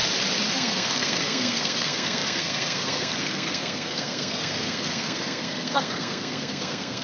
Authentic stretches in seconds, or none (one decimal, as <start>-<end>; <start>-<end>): 0.0-0.5